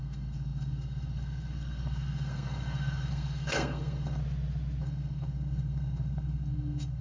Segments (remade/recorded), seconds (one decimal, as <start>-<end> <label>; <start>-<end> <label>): 0.0-4.2 remade; 4.2-4.8 recorded; 4.8-7.0 remade

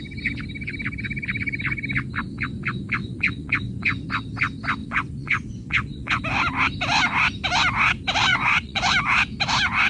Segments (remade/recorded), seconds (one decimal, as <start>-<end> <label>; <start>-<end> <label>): 0.0-3.0 recorded; 3.0-4.1 remade; 4.1-4.8 recorded; 4.8-6.2 remade; 6.2-8.3 recorded; 8.3-8.9 remade; 8.9-9.9 recorded

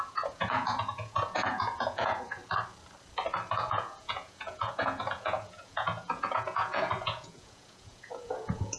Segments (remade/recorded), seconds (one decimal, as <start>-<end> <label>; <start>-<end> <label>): 0.0-2.4 remade; 2.4-3.5 recorded; 3.5-8.8 remade

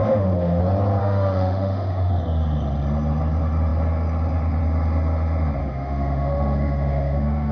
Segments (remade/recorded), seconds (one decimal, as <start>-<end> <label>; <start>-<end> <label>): 0.0-0.6 remade; 0.6-1.0 recorded; 1.0-2.1 remade; 2.1-5.6 recorded; 5.6-7.5 remade

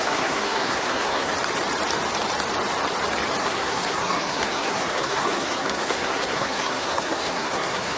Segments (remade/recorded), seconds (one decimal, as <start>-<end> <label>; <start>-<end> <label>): 0.0-1.3 remade; 1.3-3.4 recorded; 3.4-8.0 remade

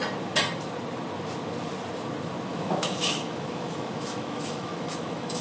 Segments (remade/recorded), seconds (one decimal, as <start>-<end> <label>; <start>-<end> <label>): 0.0-2.5 recorded; 2.5-5.4 remade

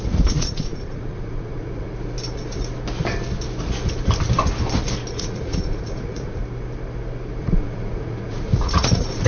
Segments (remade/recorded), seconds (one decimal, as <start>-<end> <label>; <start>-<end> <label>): 0.0-1.9 remade; 1.9-5.1 recorded; 5.1-6.4 remade; 6.4-7.4 recorded; 7.4-9.3 remade